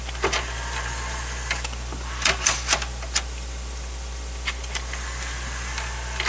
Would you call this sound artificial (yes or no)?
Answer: yes